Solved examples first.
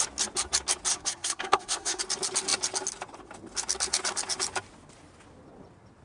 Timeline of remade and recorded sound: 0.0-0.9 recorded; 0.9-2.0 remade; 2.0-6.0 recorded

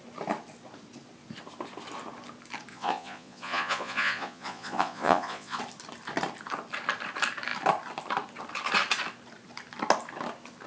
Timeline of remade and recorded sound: 0.0-2.7 recorded; 2.7-5.6 remade; 5.6-10.7 recorded

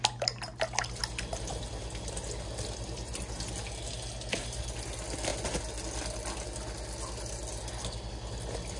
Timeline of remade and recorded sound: 0.0-8.8 recorded

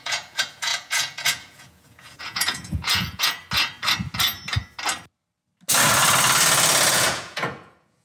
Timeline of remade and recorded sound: 0.0-3.4 remade; 3.4-6.9 recorded; 6.9-8.0 remade

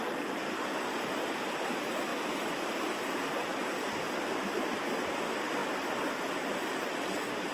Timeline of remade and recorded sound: 0.0-2.1 recorded; 2.1-2.6 remade; 2.6-7.5 recorded

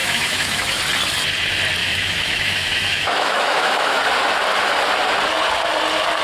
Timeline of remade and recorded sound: 0.0-0.8 remade; 0.8-1.8 recorded; 1.8-4.0 remade; 4.0-6.2 recorded

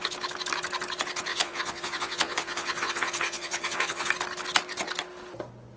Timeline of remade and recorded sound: 0.0-1.3 recorded; 1.3-4.1 remade; 4.1-5.8 recorded